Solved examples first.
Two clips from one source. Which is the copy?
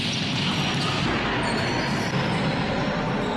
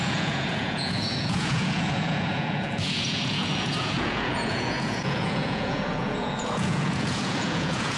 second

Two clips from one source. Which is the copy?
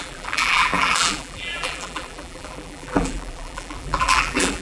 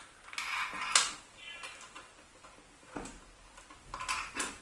first